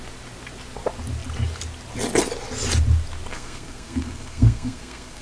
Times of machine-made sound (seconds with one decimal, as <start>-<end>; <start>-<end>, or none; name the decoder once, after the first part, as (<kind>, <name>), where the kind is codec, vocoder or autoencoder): 3.3-5.2 (codec, SNAC)